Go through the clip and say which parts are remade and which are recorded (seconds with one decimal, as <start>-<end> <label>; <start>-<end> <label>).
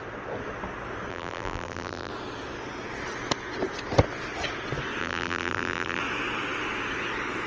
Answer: 0.0-1.1 recorded; 1.1-2.1 remade; 2.1-5.0 recorded; 5.0-6.0 remade; 6.0-7.5 recorded